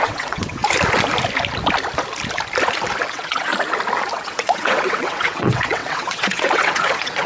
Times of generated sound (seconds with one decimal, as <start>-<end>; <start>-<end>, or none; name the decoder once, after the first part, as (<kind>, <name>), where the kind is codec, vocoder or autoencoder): 0.0-0.6 (vocoder, WaveNeXt); 3.1-3.5; 4.1-7.3